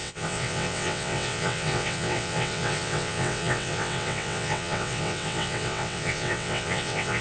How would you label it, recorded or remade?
remade